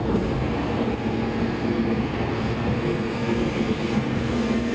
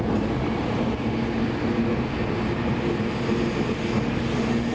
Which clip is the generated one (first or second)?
first